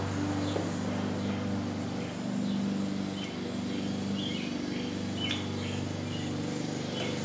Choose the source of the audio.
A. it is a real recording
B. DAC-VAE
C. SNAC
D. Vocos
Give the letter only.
A